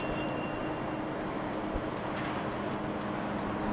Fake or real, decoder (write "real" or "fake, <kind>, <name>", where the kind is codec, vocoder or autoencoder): real